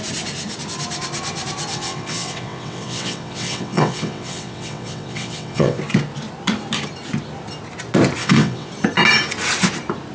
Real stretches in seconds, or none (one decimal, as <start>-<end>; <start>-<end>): 0.0-1.7; 5.8-8.2; 8.7-10.1